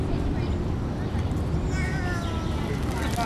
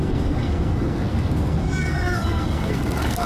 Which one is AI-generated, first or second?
second